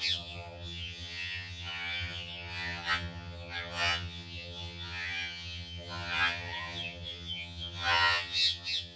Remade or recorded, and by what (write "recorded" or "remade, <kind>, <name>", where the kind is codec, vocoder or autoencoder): remade, vocoder, HiFi-GAN